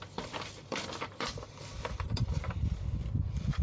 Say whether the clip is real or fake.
fake